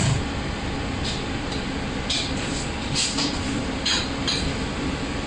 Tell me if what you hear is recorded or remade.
recorded